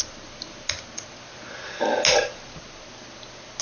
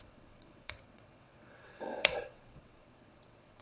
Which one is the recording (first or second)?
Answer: first